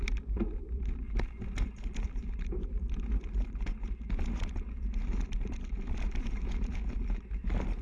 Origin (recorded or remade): remade